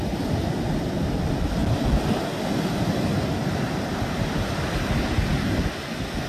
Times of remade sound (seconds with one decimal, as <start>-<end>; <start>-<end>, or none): none